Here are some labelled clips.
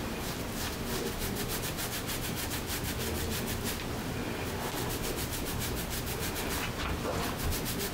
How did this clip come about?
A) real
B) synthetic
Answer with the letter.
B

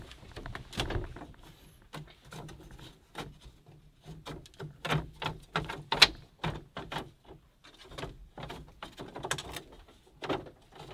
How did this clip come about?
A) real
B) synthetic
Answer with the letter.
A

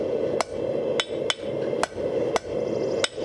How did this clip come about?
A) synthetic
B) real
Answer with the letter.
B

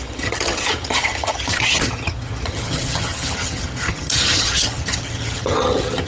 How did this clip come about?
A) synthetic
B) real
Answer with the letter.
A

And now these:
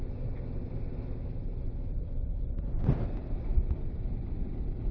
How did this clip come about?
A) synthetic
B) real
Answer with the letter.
B